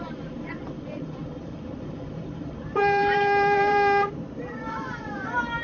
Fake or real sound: fake